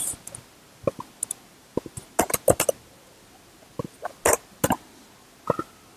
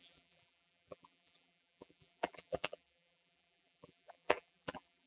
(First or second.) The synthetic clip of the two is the second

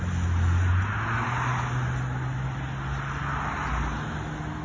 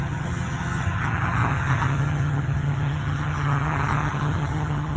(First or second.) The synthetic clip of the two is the second